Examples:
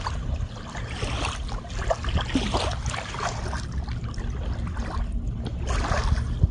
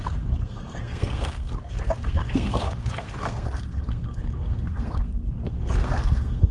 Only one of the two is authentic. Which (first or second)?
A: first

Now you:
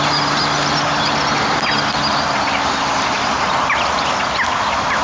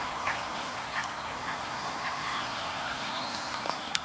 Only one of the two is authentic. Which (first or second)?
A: first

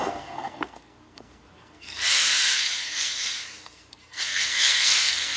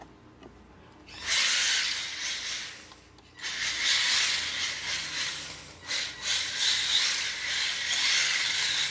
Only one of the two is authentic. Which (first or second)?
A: second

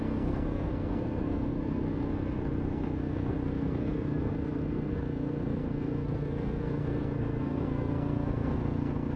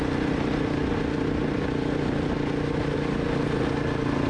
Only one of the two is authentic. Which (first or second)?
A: second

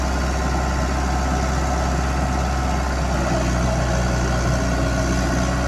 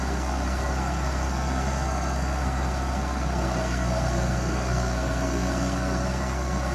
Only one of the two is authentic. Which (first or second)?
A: first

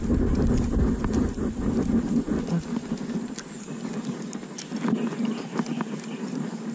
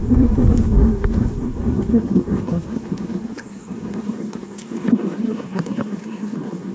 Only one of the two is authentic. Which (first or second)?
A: first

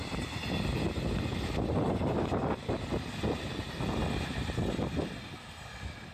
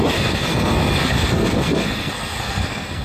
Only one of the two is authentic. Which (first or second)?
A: first